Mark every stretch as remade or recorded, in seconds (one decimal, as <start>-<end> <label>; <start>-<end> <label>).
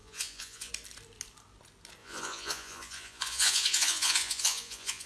0.0-0.7 remade; 0.7-2.0 recorded; 2.0-5.1 remade